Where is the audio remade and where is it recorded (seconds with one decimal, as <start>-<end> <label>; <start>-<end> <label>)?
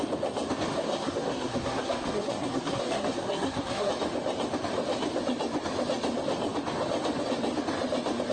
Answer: 0.0-0.7 recorded; 0.7-3.9 remade; 3.9-8.3 recorded